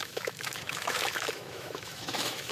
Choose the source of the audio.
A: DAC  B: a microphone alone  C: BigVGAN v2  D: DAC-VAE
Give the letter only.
D